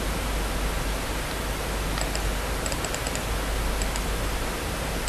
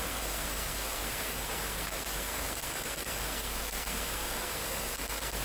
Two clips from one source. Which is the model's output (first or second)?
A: second